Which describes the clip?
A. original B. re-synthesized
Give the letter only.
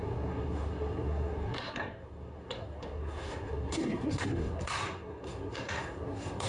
B